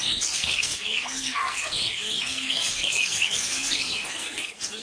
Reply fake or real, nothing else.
fake